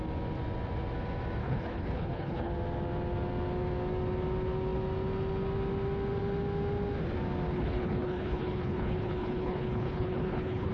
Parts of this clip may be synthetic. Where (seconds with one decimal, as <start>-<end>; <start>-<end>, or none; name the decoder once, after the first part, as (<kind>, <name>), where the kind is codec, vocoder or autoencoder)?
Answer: 1.4-2.5 (codec, HILCodec); 7.5-10.7